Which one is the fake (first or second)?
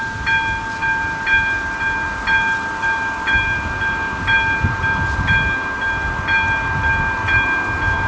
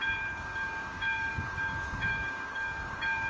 second